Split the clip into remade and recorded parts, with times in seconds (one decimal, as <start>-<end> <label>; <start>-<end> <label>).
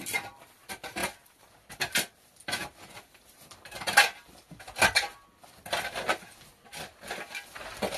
0.0-8.0 recorded